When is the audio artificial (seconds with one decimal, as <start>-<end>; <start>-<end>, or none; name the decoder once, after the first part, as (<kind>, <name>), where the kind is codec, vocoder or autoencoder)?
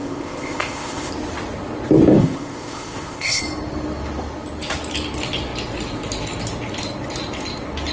0.0-1.1 (codec, ZipCodec); 2.2-3.4